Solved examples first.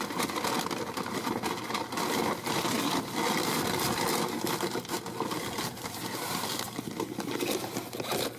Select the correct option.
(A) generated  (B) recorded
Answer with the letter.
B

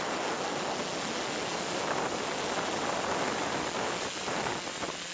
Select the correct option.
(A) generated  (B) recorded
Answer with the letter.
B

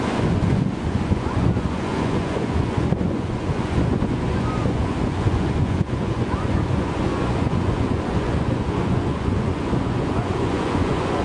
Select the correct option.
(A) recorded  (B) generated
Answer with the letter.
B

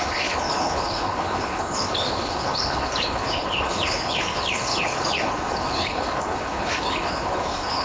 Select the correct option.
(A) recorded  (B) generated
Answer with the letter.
B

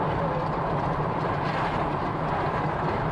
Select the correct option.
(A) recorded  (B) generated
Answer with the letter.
B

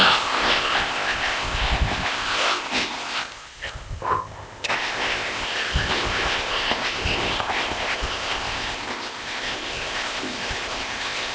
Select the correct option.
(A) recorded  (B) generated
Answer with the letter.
B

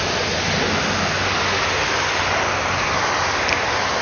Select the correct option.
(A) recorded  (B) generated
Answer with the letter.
A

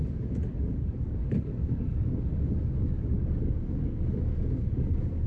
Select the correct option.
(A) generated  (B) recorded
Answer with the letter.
A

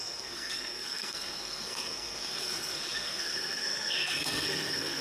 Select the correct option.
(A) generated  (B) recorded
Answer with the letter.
A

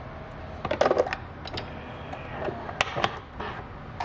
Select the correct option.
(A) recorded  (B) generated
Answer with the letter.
A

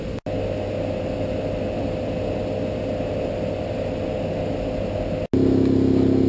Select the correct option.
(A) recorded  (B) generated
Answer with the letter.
A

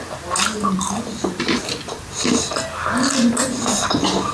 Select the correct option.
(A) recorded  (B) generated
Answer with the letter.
A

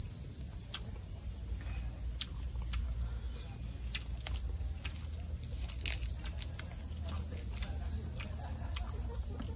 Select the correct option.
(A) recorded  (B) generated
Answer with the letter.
A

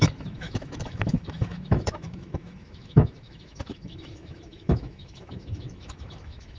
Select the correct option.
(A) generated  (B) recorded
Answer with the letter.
A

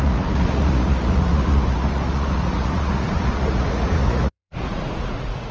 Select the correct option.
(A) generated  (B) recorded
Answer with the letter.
A